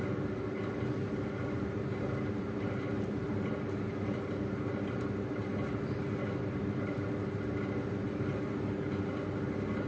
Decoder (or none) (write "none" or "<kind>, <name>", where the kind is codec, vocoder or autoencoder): vocoder, BigVGAN v2